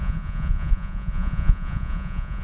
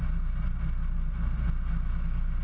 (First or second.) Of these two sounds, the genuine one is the second